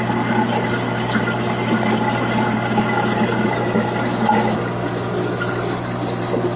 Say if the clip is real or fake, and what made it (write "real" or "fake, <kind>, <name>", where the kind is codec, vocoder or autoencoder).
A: real